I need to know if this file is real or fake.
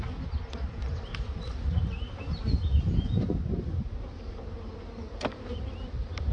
real